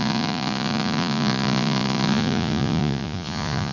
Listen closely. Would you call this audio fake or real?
fake